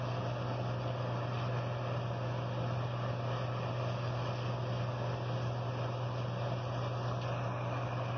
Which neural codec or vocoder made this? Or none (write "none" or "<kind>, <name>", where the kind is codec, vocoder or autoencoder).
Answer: none